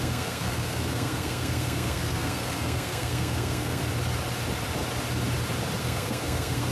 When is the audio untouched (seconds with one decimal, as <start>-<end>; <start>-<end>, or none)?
3.8-5.8